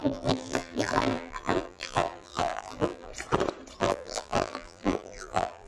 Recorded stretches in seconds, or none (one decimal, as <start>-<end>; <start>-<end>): 3.1-3.8